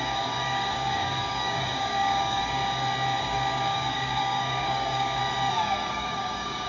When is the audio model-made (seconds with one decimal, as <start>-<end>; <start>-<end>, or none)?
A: 0.0-2.6; 3.2-5.2; 5.9-6.7